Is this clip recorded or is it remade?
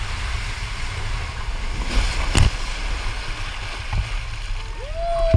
recorded